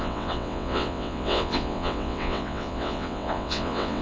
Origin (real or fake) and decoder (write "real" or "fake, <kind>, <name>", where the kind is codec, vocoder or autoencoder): fake, vocoder, WaveNeXt